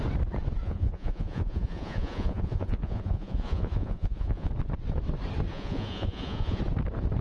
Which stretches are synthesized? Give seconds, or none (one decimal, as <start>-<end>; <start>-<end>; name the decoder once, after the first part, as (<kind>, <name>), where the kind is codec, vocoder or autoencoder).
0.6-4.5 (vocoder, Vocos); 5.5-6.6